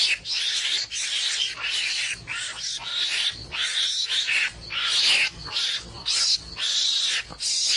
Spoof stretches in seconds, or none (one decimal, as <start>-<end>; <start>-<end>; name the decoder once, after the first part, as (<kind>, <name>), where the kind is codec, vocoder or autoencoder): none